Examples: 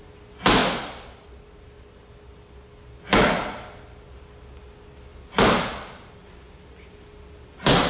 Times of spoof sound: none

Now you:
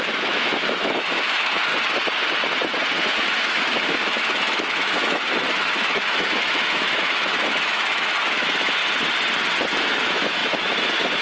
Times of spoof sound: 0.0-1.7 (autoencoder, DAC-VAE); 3.1-8.8; 9.7-11.2

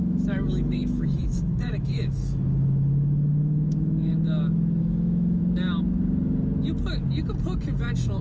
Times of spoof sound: 0.0-4.1 (autoencoder, DAC-VAE); 4.8-5.4

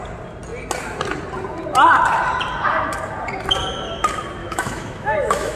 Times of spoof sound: 4.4-5.6 (autoencoder, DAC-VAE)

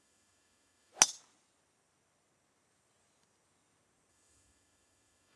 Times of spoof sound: 0.0-0.9 (autoencoder, DAC-VAE); 4.1-5.4

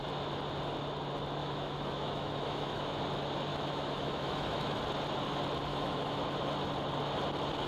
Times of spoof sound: 1.4-3.0 (autoencoder, DAC-VAE); 3.5-4.8; 5.7-6.2

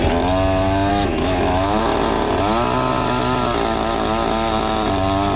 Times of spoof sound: 0.9-1.8 (autoencoder, DAC-VAE)